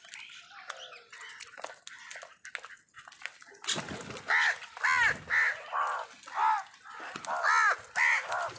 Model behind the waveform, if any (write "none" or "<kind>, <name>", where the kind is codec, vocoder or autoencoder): none